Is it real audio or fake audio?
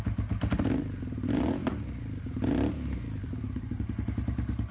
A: real